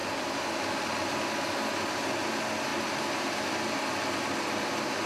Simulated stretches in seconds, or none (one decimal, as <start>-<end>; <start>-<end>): none